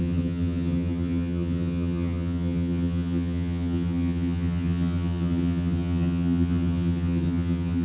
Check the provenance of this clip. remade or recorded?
remade